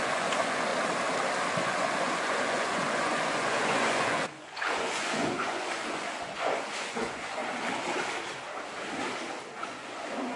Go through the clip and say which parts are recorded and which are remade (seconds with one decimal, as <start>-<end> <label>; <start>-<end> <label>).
0.0-0.7 remade; 0.7-1.5 recorded; 1.5-7.4 remade; 7.4-9.6 recorded; 9.6-10.4 remade